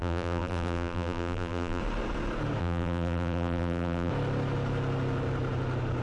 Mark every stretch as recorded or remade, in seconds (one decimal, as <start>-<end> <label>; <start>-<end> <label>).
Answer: 0.0-1.8 remade; 1.8-2.6 recorded; 2.6-4.1 remade; 4.1-6.0 recorded